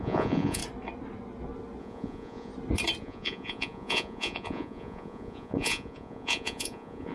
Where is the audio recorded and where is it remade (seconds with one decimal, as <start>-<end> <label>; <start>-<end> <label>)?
0.0-0.6 remade; 0.6-1.8 recorded; 1.8-2.5 remade; 2.5-3.0 recorded; 3.0-7.1 remade